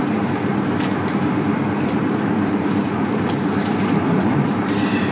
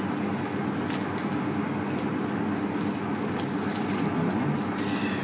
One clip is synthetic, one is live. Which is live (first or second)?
second